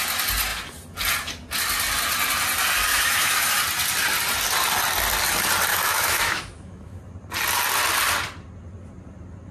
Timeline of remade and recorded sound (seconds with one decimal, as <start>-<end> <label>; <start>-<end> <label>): 0.0-2.9 recorded; 2.9-3.6 remade; 3.6-5.7 recorded; 5.7-7.0 remade; 7.0-9.5 recorded